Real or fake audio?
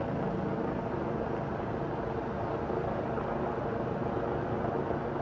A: real